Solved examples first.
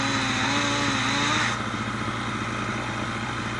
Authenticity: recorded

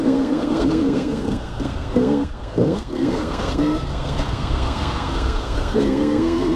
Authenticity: remade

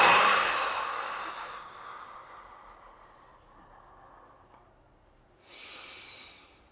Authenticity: recorded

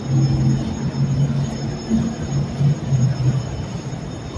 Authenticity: recorded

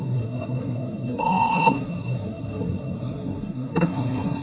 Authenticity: remade